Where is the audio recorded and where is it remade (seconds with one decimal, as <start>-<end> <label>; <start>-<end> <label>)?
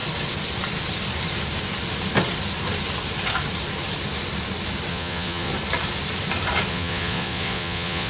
0.0-4.9 recorded; 4.9-5.5 remade; 5.5-6.7 recorded; 6.7-8.1 remade